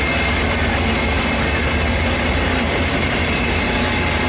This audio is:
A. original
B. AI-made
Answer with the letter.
A